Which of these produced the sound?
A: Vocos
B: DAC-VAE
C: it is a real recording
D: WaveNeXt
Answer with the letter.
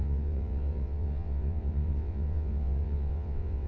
D